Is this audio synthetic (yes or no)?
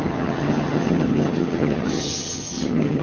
yes